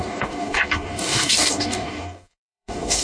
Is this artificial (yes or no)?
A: yes